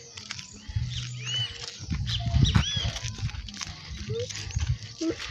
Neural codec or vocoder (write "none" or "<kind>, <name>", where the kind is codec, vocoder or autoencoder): none